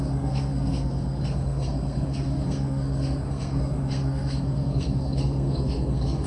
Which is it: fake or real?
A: fake